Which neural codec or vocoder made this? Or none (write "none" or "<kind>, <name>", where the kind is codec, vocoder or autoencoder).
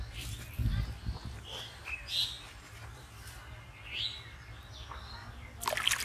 none